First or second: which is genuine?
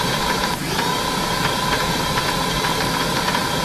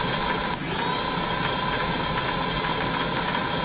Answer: second